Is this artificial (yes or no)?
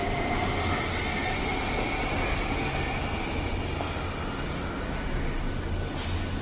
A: no